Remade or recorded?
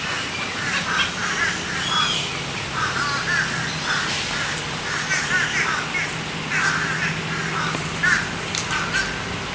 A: recorded